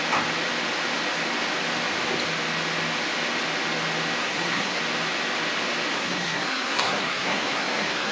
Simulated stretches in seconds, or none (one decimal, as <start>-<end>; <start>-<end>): 4.2-4.8; 5.9-8.1